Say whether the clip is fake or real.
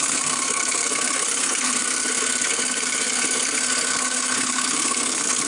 fake